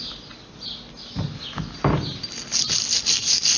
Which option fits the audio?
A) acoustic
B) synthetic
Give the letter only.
A